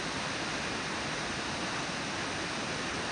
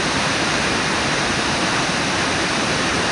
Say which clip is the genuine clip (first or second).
first